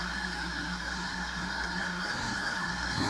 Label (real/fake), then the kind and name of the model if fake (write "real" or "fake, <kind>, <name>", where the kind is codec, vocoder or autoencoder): fake, codec, SNAC